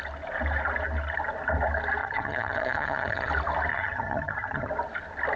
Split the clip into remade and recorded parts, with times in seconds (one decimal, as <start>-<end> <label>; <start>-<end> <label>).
0.0-2.0 recorded; 2.0-3.3 remade; 3.3-3.7 recorded; 3.7-4.7 remade; 4.7-5.4 recorded